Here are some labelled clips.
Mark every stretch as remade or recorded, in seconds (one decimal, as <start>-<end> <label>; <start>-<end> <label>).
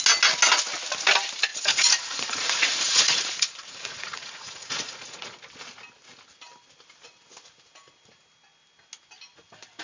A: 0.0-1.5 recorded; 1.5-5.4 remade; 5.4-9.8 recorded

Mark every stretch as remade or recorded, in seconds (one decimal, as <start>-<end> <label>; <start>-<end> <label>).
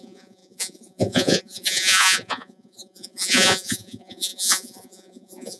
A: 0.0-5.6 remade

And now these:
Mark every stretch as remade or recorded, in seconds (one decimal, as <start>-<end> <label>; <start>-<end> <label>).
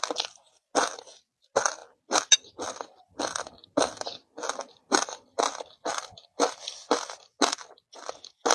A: 0.0-8.5 recorded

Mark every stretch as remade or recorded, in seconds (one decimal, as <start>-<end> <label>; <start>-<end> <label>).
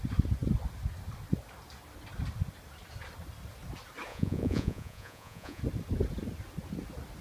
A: 0.0-4.1 recorded; 4.1-5.6 remade; 5.6-7.2 recorded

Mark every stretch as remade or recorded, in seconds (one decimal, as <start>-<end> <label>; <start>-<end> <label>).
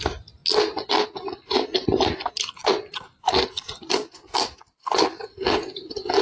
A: 0.0-6.2 recorded